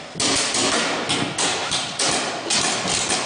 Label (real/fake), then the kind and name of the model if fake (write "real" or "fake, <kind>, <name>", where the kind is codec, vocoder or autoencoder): real